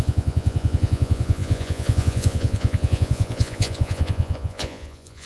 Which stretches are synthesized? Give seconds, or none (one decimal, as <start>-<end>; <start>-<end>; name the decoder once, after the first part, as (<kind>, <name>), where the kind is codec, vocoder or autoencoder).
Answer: 0.0-5.3 (vocoder, Vocos)